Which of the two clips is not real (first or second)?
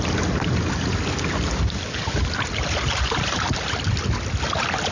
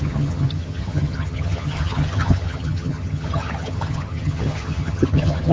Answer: second